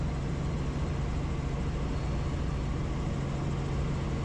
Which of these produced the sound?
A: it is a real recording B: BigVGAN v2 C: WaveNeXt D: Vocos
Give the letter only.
A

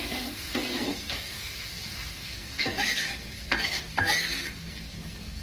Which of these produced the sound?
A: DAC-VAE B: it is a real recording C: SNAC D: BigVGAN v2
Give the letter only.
C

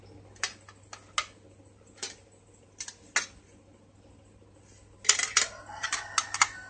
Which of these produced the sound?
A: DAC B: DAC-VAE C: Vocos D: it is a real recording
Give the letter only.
D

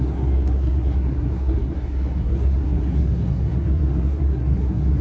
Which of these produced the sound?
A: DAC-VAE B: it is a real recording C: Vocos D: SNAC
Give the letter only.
D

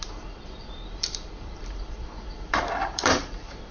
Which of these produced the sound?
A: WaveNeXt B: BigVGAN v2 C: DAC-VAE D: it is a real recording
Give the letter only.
B